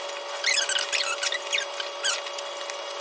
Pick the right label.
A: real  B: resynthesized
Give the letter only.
A